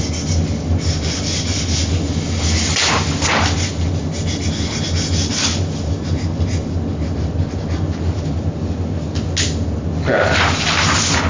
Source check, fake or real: real